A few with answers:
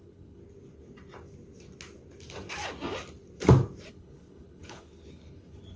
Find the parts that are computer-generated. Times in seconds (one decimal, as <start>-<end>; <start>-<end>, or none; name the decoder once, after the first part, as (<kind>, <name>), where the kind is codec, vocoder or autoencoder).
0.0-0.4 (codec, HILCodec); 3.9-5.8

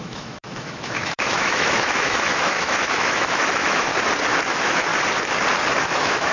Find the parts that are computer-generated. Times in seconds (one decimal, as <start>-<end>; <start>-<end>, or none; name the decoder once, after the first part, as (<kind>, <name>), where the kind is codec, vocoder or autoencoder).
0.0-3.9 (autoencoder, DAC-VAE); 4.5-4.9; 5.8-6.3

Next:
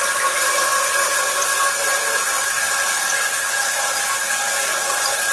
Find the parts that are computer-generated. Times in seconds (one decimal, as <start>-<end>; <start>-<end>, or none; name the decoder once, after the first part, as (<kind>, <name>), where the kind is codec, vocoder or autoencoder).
none

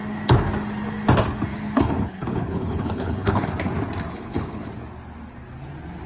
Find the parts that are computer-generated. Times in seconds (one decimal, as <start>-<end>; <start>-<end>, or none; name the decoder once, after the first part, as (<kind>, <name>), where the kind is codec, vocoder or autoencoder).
1.5-3.5 (codec, HILCodec); 4.1-4.7

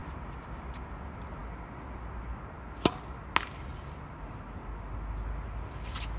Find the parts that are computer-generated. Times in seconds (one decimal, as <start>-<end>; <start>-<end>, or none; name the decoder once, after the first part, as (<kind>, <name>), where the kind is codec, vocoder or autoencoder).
0.0-0.8 (vocoder, BigVGAN v2); 1.4-2.2

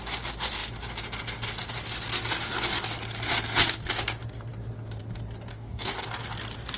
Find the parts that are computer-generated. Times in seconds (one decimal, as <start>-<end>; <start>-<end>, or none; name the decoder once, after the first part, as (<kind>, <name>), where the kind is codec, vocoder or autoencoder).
5.5-6.0 (codec, DAC)

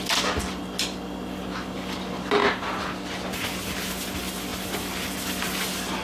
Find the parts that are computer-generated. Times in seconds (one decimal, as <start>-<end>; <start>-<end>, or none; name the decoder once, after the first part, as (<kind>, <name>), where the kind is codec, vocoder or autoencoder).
none

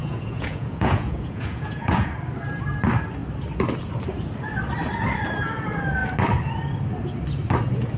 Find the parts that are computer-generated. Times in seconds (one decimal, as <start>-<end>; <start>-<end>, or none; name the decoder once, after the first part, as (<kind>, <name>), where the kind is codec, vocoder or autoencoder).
0.0-2.1 (vocoder, Vocos)